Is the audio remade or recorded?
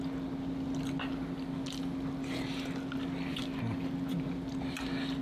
recorded